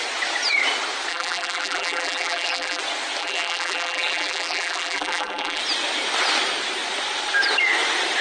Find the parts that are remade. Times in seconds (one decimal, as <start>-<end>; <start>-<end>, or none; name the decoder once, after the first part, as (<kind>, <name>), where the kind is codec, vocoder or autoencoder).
1.1-2.8 (vocoder, BigVGAN v2); 3.2-5.6